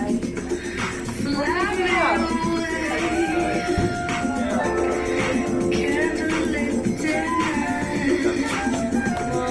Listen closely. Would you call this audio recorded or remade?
recorded